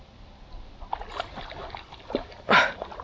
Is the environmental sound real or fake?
real